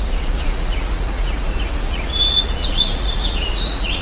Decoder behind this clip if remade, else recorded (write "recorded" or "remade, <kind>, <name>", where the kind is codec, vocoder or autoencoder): remade, vocoder, Vocos